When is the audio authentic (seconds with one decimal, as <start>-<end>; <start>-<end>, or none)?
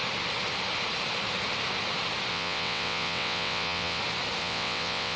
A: 0.0-2.3; 4.0-4.4